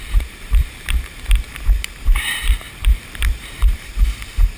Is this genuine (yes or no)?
no